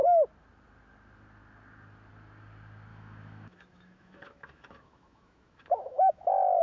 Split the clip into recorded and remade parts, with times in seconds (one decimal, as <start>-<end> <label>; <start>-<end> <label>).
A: 0.0-2.9 recorded; 2.9-6.6 remade